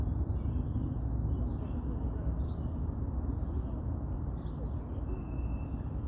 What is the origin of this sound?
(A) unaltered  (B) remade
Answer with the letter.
A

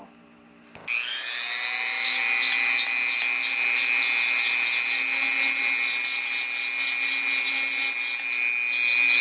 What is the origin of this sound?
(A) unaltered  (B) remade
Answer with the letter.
A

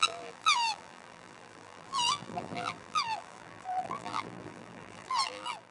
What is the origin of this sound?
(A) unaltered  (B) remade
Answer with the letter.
B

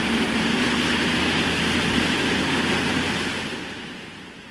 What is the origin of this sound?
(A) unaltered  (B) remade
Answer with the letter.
A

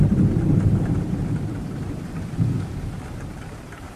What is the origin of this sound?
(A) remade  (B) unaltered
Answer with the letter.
A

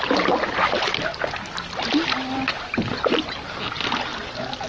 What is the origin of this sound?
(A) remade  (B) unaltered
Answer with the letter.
B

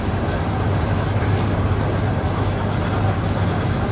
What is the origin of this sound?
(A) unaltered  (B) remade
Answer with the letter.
A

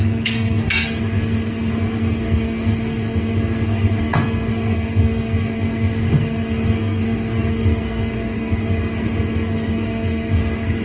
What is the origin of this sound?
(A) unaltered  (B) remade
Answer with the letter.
B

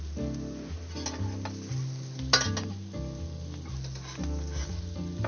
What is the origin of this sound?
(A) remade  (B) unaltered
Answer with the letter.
B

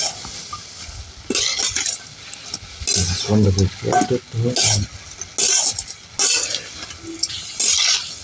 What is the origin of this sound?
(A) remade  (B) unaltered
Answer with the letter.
B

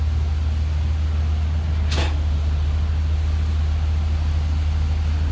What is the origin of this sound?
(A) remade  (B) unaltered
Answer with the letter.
B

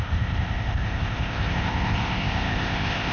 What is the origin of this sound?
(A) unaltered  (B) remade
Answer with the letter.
B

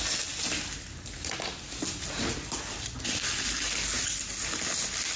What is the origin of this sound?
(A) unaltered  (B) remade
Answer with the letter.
A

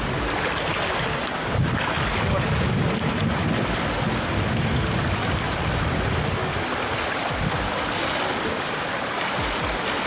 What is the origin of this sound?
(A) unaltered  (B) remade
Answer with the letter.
A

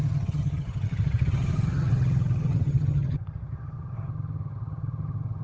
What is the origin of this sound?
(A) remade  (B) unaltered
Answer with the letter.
A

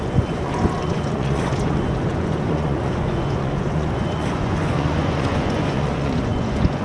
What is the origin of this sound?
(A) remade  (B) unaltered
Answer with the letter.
A